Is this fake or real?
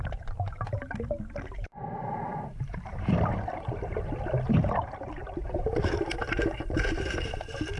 fake